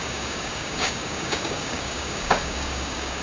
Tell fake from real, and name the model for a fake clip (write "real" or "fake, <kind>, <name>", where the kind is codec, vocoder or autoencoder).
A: fake, codec, DAC